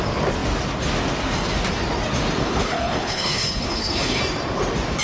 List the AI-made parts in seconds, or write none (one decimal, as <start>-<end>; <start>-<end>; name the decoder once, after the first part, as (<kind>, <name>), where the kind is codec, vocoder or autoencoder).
2.4-4.2 (codec, HILCodec)

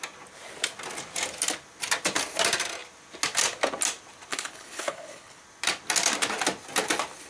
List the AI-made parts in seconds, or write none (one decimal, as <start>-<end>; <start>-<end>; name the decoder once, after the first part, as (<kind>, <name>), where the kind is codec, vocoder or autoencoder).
4.3-5.4 (codec, HILCodec)

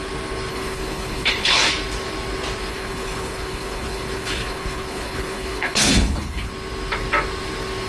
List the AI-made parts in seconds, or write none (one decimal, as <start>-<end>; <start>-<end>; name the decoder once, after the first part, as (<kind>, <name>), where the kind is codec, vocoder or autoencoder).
0.5-1.7 (codec, HILCodec); 2.7-6.5

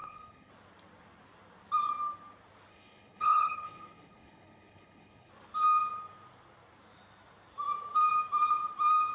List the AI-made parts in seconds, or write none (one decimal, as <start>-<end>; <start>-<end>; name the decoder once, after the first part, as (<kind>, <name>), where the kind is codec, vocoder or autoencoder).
0.0-0.5 (codec, HILCodec); 2.7-5.3

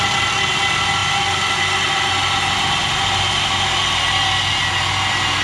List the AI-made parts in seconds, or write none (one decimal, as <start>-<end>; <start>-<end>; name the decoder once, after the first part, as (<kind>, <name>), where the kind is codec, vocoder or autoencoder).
none

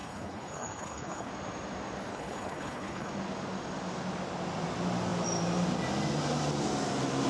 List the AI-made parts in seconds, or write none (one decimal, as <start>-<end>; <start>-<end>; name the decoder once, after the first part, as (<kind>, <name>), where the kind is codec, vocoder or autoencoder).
0.0-1.3 (codec, HILCodec); 2.1-3.1

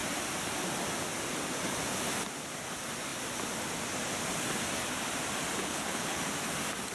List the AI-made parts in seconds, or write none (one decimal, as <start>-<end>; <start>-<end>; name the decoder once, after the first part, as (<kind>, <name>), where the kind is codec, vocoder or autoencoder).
5.6-6.2 (codec, HILCodec)

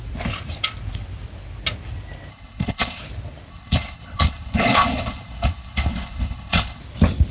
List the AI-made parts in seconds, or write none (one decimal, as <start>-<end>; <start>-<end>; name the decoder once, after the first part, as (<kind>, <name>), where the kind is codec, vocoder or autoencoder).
2.3-3.0 (codec, HILCodec); 3.5-6.8